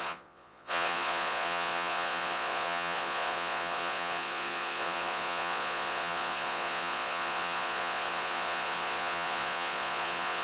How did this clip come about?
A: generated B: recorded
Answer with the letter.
A